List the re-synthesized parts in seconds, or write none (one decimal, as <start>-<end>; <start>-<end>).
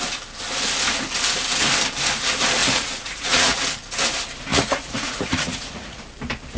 2.6-3.6; 4.5-6.0